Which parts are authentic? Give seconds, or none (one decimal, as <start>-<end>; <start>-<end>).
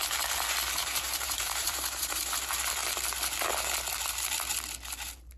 0.0-0.8; 2.3-5.4